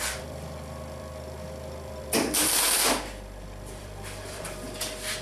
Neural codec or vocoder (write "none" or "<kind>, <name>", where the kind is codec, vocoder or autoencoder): vocoder, BigVGAN v2